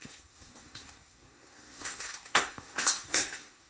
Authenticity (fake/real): fake